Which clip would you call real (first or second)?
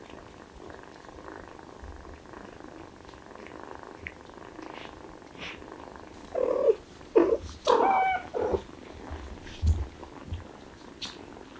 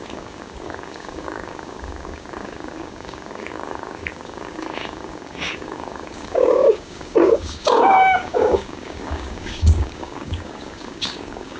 first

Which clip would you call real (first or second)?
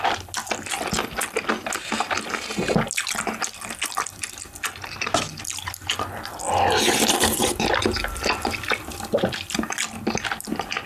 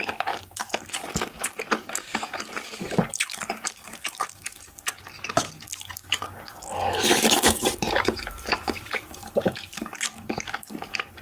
first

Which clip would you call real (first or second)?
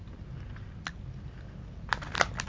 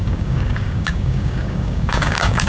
first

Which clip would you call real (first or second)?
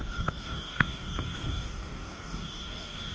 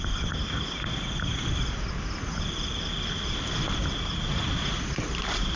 second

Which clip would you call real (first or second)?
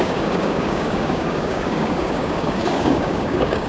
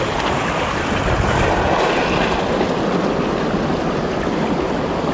second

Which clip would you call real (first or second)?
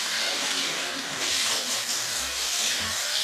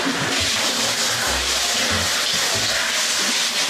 second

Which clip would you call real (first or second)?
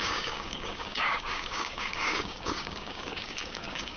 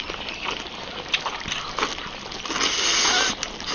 second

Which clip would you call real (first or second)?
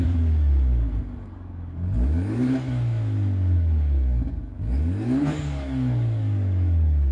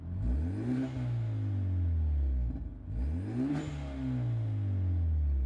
second